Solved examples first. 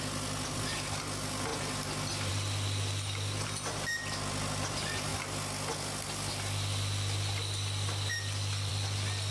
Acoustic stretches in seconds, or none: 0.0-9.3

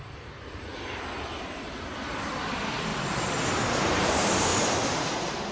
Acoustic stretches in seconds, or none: 0.7-1.4; 2.9-3.5; 4.5-5.5

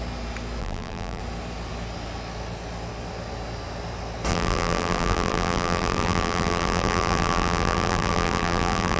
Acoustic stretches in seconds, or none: 0.0-0.6; 1.2-4.3